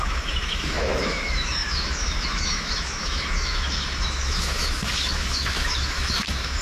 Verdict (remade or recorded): remade